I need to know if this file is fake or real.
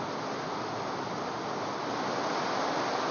real